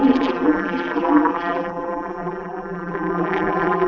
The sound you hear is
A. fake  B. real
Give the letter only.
A